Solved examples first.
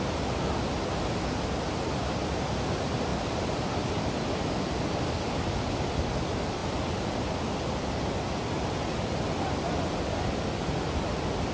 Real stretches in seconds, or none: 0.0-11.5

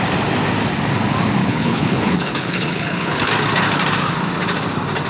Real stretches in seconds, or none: 0.0-1.4; 3.3-5.1

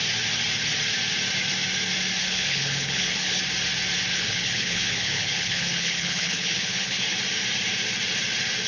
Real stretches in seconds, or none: 0.0-2.2; 3.4-4.1; 7.1-8.7